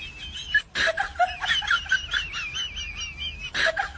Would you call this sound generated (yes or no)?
no